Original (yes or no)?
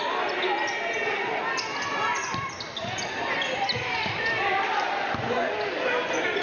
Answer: yes